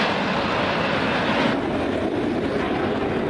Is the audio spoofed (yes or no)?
no